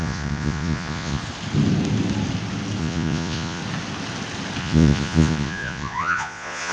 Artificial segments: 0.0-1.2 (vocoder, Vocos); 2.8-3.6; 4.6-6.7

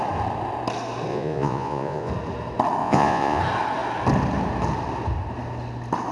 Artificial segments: 1.1-2.1 (vocoder, Vocos); 2.8-3.4

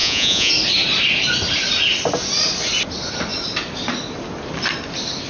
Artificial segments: 0.0-0.5 (vocoder, Vocos)

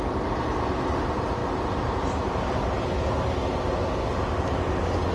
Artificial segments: none

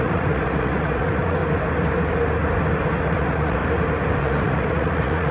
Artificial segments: 0.0-1.4 (vocoder, Vocos); 3.1-3.6; 4.2-5.3

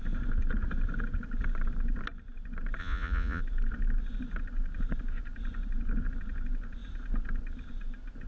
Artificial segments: 2.8-3.4 (vocoder, Vocos)

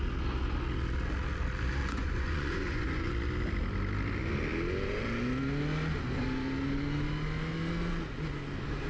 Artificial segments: 1.8-3.1 (vocoder, Vocos)